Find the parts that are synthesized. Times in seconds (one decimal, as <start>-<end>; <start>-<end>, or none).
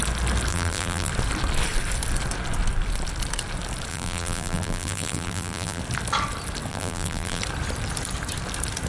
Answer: 0.5-1.1; 3.9-5.8; 6.7-7.4